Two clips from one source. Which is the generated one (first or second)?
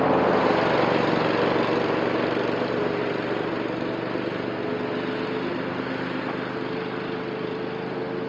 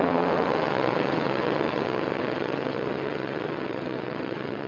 second